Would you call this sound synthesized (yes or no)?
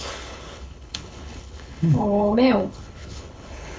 yes